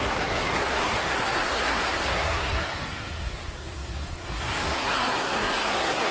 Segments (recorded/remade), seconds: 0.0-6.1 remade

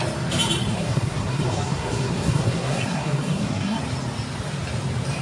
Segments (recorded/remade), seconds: 0.0-0.7 recorded; 0.7-3.8 remade; 3.8-5.2 recorded

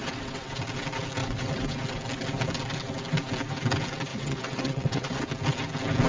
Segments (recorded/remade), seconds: 0.0-0.5 remade; 0.5-1.2 recorded; 1.2-1.8 remade; 1.8-4.1 recorded; 4.1-5.3 remade; 5.3-6.1 recorded

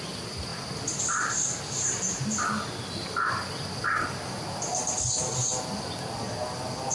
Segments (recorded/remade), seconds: 0.0-6.9 recorded

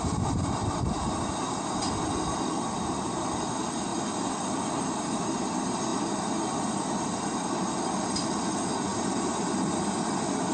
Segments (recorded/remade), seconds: 0.0-3.9 remade; 3.9-4.8 recorded; 4.8-10.5 remade